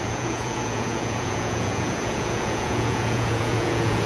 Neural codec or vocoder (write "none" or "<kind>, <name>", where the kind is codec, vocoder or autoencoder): vocoder, Vocos